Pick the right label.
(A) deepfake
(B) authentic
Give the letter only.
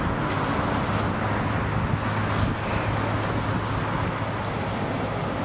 B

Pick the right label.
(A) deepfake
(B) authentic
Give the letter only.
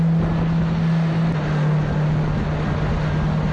B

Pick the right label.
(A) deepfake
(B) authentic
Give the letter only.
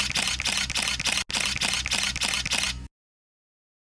B